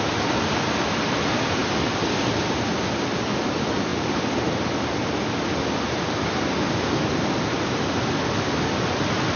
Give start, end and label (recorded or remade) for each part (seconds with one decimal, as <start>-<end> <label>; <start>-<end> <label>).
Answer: 0.0-9.4 recorded